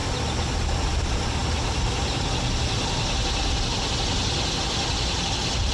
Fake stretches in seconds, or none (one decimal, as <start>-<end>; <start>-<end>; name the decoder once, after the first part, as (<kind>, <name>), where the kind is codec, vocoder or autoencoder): none